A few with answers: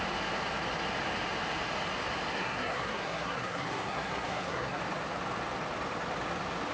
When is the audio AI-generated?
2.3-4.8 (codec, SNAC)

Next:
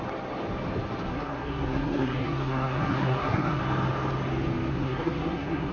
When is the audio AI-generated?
1.1-3.6 (codec, SNAC); 4.7-5.7

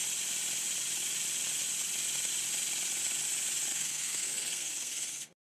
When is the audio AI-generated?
3.7-5.5 (codec, SNAC)